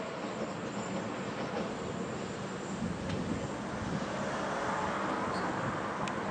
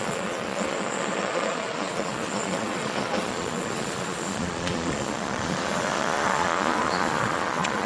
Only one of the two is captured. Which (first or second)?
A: first